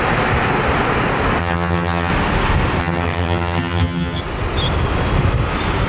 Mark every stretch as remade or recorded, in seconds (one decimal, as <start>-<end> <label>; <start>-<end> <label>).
0.0-1.4 recorded; 1.4-2.1 remade; 2.1-2.8 recorded; 2.8-4.2 remade; 4.2-5.9 recorded

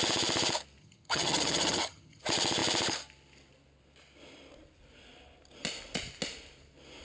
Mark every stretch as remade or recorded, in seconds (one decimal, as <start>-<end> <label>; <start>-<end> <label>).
0.0-0.8 recorded; 0.8-2.2 remade; 2.2-7.0 recorded

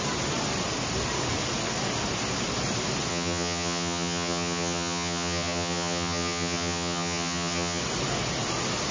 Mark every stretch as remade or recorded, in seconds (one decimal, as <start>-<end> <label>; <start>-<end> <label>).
0.0-3.1 recorded; 3.1-7.8 remade; 7.8-8.9 recorded

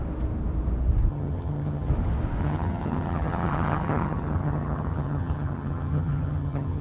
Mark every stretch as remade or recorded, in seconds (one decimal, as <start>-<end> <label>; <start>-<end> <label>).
0.0-1.1 recorded; 1.1-1.9 remade; 1.9-2.4 recorded; 2.4-6.8 remade